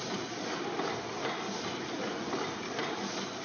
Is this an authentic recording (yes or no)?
yes